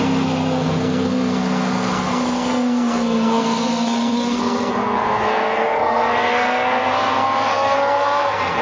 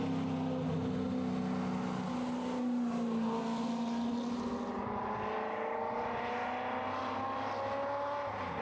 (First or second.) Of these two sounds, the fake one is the first